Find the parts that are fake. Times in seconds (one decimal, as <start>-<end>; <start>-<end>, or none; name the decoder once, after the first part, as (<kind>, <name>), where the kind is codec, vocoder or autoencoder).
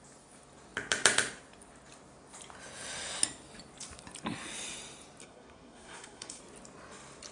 5.2-6.4 (codec, SNAC)